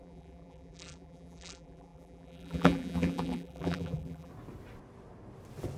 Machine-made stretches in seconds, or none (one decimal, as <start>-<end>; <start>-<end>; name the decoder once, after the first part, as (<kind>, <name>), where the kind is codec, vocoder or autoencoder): 0.0-4.3 (vocoder, BigVGAN v2)